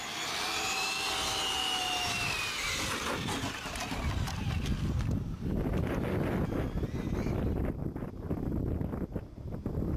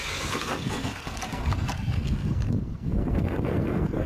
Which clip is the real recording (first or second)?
first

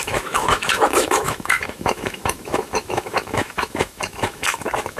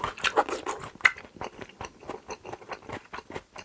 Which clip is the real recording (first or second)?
second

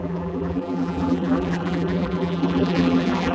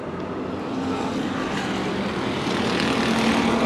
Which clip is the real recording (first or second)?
second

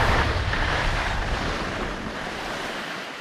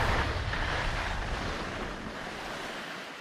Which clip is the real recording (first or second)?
second